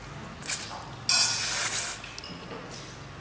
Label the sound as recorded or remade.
recorded